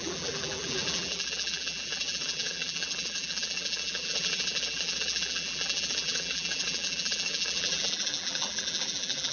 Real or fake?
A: fake